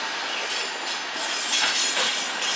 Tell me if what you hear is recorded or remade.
recorded